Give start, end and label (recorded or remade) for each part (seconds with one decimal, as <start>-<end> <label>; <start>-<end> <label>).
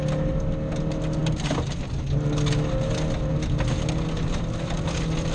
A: 0.0-5.3 recorded